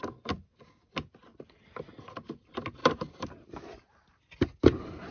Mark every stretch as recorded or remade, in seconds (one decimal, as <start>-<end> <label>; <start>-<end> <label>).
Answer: 0.0-2.8 recorded; 2.8-4.2 remade; 4.2-5.1 recorded